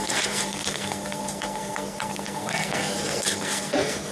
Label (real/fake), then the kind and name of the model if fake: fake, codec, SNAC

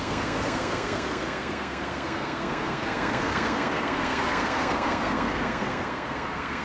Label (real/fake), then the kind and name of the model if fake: fake, codec, SNAC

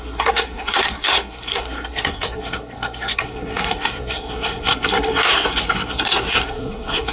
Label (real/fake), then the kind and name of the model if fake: fake, codec, SNAC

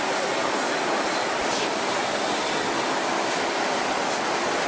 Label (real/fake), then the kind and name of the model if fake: real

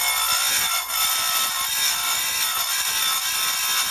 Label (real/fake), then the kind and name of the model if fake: real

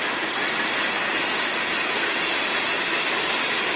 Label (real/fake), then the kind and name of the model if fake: real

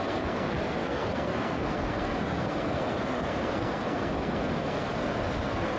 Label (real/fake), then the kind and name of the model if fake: fake, codec, SNAC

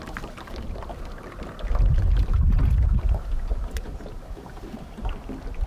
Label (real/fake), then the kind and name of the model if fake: real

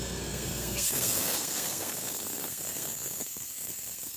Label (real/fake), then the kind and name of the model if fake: fake, codec, SNAC